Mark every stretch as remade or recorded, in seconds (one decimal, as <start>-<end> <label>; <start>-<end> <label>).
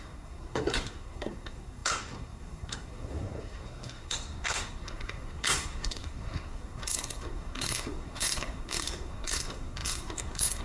0.0-10.6 remade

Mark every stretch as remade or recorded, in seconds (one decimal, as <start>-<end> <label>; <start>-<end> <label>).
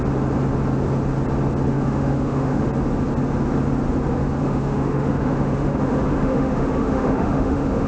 0.0-1.7 recorded; 1.7-2.6 remade; 2.6-4.4 recorded; 4.4-7.9 remade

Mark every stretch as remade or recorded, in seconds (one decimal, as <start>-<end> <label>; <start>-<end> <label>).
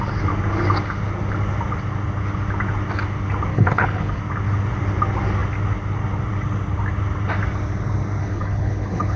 0.0-3.5 recorded; 3.5-4.2 remade; 4.2-8.2 recorded; 8.2-9.2 remade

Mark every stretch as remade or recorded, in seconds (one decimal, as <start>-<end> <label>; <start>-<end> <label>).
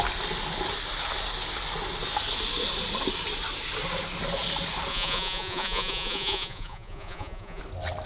0.0-4.9 recorded; 4.9-7.6 remade; 7.6-8.1 recorded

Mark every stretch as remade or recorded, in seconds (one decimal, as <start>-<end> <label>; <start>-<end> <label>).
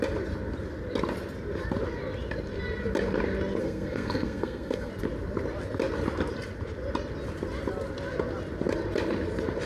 0.0-3.6 recorded; 3.6-4.9 remade; 4.9-9.7 recorded